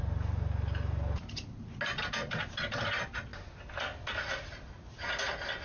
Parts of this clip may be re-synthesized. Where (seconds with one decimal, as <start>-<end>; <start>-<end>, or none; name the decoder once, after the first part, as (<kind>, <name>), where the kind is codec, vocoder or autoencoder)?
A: none